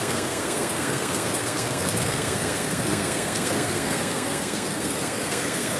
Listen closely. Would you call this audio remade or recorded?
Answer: remade